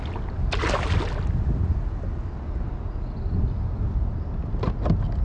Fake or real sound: real